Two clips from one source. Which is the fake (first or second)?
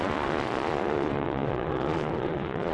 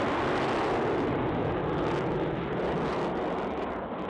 first